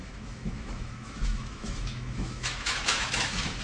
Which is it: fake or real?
fake